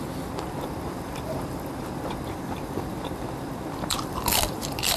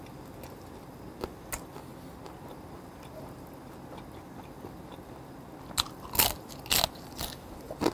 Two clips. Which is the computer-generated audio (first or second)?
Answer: first